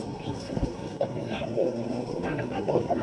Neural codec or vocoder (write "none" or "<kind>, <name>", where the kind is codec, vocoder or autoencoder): codec, SNAC